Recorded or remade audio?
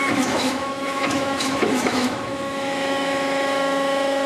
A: remade